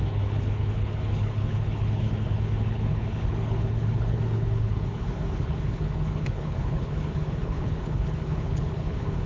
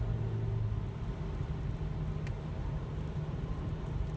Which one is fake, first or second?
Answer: first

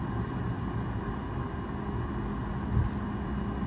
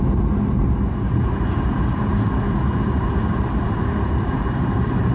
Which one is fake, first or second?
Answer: second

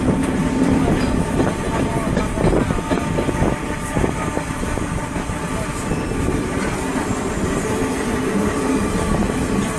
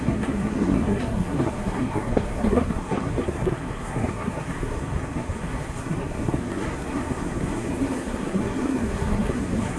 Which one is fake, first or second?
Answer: second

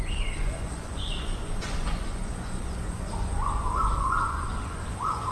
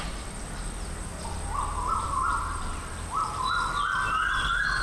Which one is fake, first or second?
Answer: first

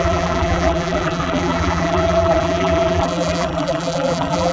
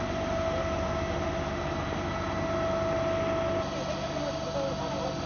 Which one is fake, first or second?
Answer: first